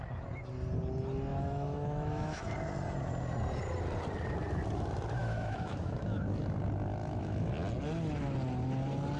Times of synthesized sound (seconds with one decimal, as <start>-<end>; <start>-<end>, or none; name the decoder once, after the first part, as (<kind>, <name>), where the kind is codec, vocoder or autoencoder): 1.3-2.5 (autoencoder, DAC-VAE); 5.2-6.0; 7.0-7.5